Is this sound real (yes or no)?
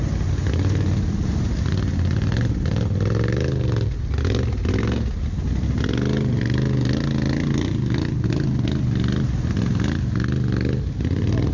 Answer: yes